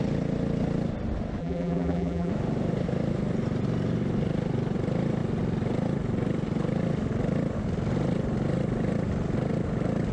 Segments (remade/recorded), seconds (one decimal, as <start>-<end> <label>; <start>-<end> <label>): 0.0-1.4 recorded; 1.4-2.3 remade; 2.3-10.1 recorded